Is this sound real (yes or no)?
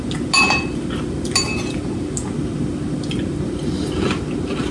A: yes